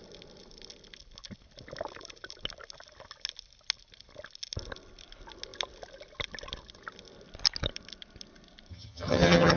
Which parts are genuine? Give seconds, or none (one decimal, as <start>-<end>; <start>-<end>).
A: 0.0-8.7